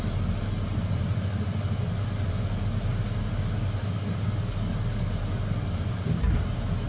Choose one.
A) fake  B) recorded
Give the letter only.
B